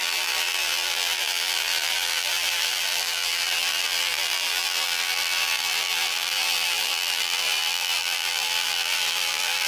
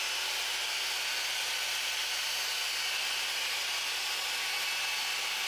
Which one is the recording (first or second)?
second